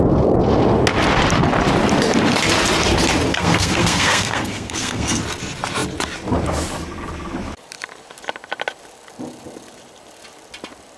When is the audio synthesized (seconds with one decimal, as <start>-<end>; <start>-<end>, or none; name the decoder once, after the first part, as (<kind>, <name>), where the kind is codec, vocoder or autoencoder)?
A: 3.3-5.2 (codec, SNAC)